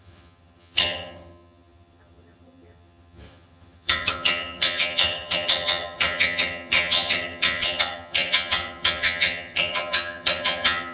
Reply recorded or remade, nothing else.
remade